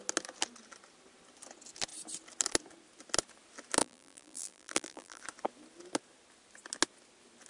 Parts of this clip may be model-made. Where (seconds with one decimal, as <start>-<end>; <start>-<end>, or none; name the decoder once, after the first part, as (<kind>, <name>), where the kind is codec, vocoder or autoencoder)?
3.8-5.2 (vocoder, BigVGAN v2)